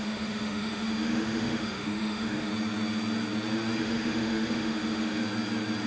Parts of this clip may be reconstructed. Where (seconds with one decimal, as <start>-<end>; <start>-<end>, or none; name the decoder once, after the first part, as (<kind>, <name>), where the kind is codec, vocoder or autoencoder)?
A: 0.0-2.5 (autoencoder, DAC-VAE); 3.8-5.2